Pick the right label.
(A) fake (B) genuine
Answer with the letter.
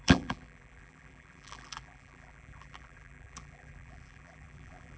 A